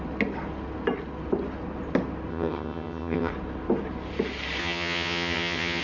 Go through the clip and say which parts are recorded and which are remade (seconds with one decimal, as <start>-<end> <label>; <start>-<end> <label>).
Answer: 0.0-2.3 recorded; 2.3-3.3 remade; 3.3-4.6 recorded; 4.6-5.8 remade